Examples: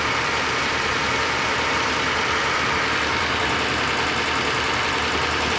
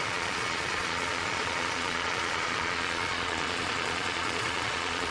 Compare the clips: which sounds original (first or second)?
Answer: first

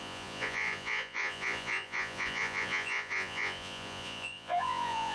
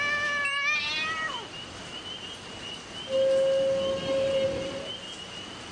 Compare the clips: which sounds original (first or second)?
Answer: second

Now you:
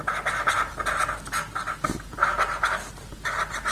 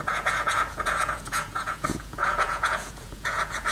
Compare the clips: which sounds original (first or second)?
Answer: first